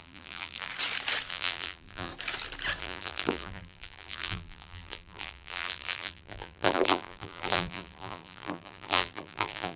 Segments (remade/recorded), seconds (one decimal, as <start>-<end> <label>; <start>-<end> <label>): 0.0-0.7 remade; 0.7-1.3 recorded; 1.3-2.1 remade; 2.1-2.8 recorded; 2.8-9.8 remade